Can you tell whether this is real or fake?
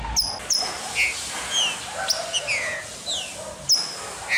real